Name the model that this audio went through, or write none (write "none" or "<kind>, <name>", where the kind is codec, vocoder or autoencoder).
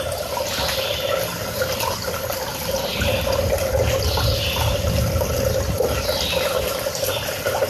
none